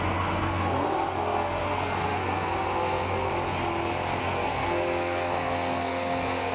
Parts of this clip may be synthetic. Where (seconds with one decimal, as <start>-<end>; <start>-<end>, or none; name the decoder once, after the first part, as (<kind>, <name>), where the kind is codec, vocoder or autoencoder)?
0.0-3.3 (codec, SNAC); 4.2-6.5